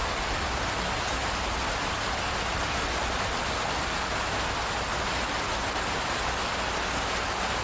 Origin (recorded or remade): recorded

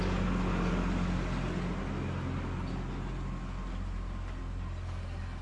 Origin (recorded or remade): recorded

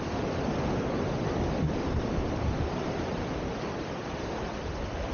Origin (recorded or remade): recorded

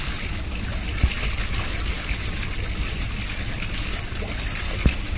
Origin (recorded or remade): recorded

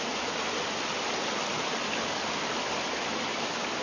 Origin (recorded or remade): recorded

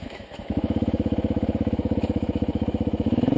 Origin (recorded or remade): remade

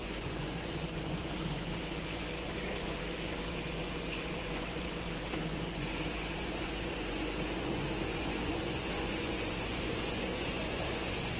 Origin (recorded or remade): remade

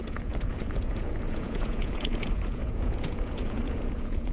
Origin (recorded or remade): remade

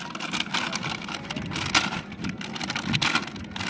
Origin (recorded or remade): recorded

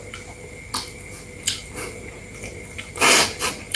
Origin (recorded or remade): recorded